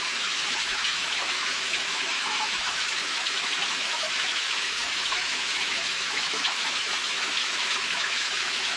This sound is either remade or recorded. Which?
remade